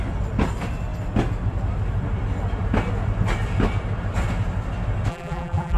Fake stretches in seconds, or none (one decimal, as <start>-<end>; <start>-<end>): 5.1-5.8